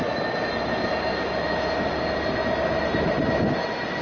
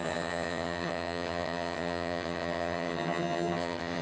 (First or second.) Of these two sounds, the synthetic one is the second